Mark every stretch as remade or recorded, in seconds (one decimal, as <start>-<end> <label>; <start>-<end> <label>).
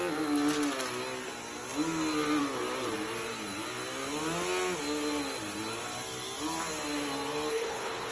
0.0-7.5 recorded; 7.5-8.1 remade